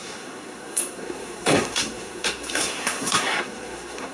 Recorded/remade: remade